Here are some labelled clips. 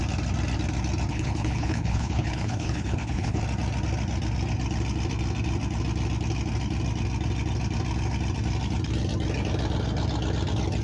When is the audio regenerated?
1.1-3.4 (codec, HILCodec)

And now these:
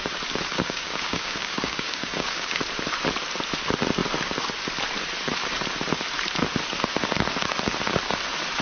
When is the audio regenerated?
0.5-2.6 (codec, DAC)